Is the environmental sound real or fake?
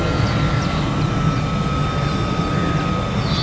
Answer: real